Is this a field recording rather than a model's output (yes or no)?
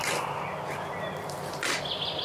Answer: yes